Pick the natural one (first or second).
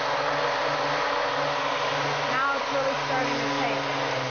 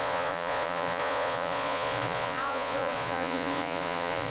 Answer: first